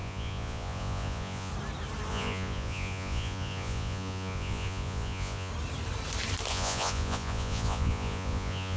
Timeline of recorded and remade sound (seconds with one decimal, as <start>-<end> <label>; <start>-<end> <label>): 0.0-1.5 remade; 1.5-2.1 recorded; 2.1-5.5 remade; 5.5-6.5 recorded; 6.5-8.8 remade

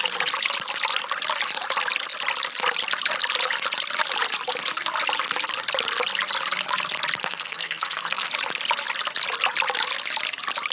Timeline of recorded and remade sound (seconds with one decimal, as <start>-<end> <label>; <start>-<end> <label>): 0.0-7.2 recorded; 7.2-8.3 remade; 8.3-10.7 recorded

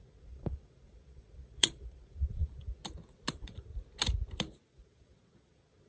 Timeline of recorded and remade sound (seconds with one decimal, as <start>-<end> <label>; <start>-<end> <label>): 0.0-2.8 remade; 2.8-3.3 recorded; 3.3-3.7 remade; 3.7-4.7 recorded; 4.7-5.9 remade

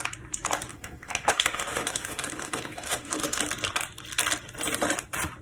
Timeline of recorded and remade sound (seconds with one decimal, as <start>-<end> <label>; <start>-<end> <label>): 0.0-0.7 recorded; 0.7-3.4 remade; 3.4-5.4 recorded

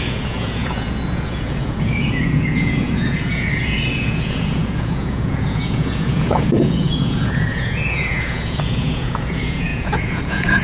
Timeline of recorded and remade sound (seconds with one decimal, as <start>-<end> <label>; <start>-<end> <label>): 0.0-10.6 remade

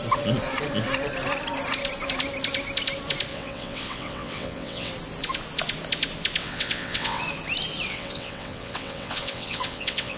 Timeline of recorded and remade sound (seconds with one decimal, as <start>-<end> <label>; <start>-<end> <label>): 0.0-3.3 recorded; 3.3-4.9 remade; 4.9-6.4 recorded; 6.4-7.2 remade; 7.2-7.9 recorded; 7.9-10.2 remade